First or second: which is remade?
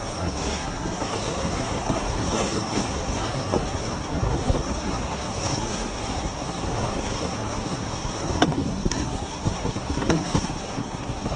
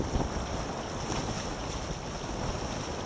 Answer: first